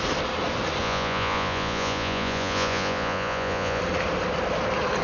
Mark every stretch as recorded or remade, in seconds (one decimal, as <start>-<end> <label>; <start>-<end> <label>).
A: 0.0-0.8 recorded; 0.8-3.8 remade; 3.8-5.0 recorded